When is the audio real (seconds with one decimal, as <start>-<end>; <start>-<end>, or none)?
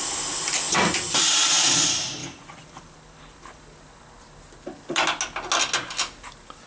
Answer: 0.0-6.7